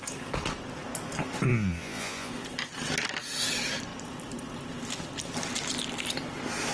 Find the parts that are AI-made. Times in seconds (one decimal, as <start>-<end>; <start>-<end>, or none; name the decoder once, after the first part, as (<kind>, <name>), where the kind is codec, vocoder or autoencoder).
1.5-2.3 (vocoder, Vocos)